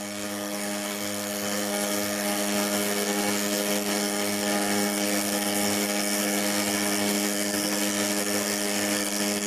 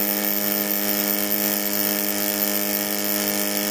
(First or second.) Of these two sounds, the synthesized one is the first